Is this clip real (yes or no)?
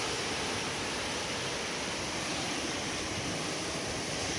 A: no